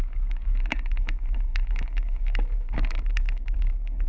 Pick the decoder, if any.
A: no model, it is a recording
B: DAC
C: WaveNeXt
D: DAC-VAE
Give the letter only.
B